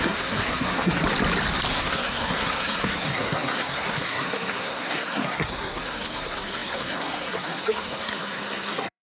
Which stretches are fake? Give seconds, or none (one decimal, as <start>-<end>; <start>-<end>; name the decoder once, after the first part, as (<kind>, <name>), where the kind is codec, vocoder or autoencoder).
0.0-1.0 (codec, SNAC); 1.7-9.0